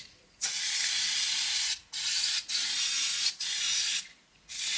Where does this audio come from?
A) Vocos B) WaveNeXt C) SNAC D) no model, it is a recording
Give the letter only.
A